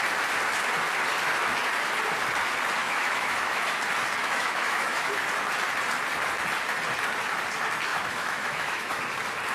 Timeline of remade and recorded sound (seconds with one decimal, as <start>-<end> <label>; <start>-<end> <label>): 0.0-2.8 recorded; 2.8-3.6 remade; 3.6-4.2 recorded; 4.2-5.2 remade; 5.2-7.9 recorded; 7.9-9.0 remade; 9.0-9.5 recorded